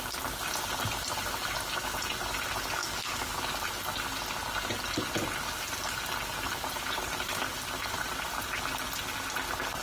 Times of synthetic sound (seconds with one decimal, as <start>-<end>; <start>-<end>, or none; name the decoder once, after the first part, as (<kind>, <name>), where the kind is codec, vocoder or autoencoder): 2.8-3.4 (codec, DAC)